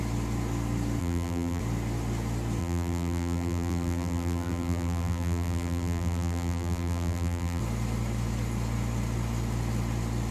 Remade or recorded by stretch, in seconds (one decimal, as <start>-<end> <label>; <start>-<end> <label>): 0.0-1.0 recorded; 1.0-1.6 remade; 1.6-2.6 recorded; 2.6-7.6 remade; 7.6-10.3 recorded